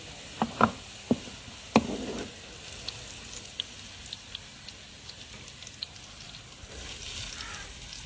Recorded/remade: recorded